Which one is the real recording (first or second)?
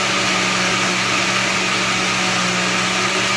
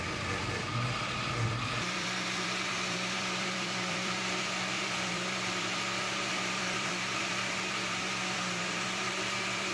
first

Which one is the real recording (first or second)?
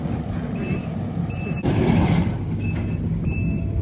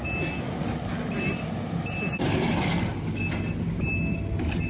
second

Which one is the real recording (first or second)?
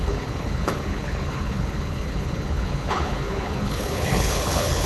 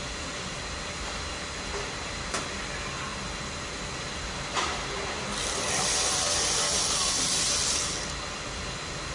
second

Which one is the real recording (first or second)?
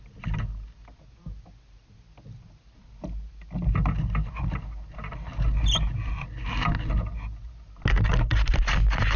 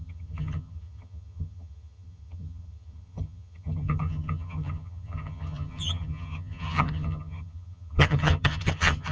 first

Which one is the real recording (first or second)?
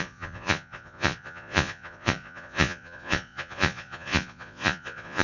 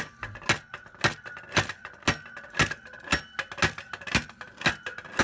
second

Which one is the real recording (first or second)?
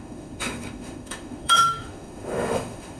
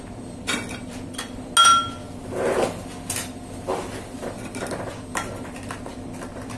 second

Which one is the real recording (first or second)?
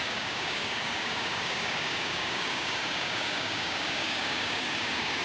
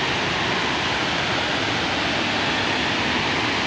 second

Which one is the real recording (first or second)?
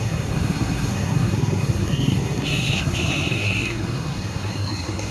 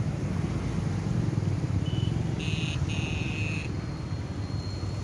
second